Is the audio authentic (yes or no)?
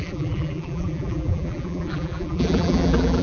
no